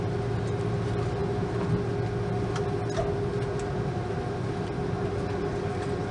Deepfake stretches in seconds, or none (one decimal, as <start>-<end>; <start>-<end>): none